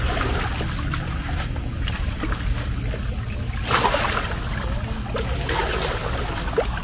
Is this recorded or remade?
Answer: recorded